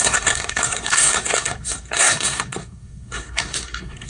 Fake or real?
fake